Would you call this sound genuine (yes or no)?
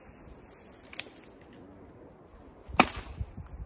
yes